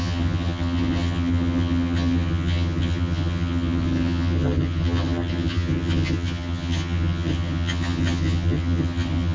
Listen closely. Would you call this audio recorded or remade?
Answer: remade